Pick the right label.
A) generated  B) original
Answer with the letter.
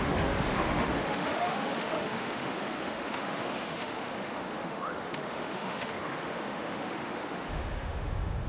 A